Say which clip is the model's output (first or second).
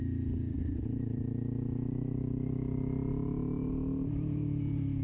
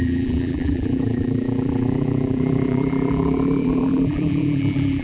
second